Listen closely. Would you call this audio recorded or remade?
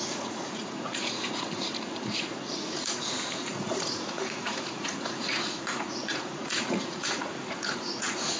remade